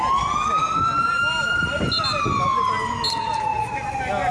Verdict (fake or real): real